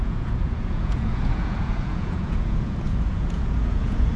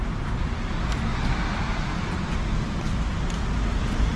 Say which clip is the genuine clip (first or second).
second